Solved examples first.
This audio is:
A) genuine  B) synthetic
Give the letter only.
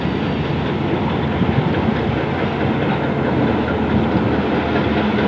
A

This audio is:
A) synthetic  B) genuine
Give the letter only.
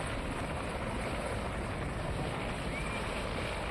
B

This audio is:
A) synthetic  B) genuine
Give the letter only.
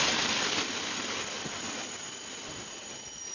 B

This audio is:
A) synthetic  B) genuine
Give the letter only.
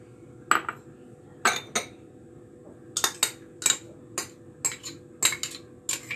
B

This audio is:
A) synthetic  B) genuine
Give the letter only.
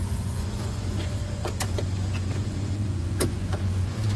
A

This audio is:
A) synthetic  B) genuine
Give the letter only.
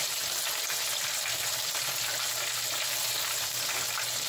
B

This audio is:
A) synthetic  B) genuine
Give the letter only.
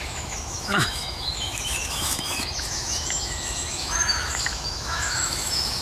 A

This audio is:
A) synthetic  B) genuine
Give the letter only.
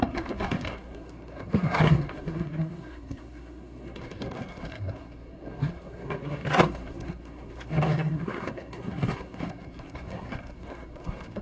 A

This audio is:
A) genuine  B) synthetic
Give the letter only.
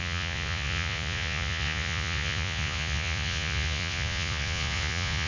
B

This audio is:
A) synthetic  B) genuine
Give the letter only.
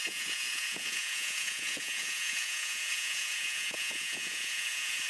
A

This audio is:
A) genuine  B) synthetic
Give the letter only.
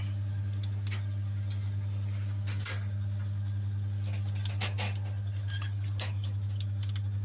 A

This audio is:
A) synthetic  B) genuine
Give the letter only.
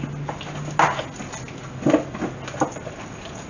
B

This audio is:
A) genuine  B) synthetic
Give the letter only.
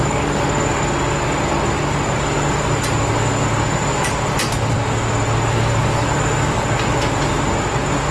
A